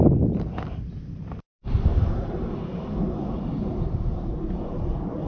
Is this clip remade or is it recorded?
recorded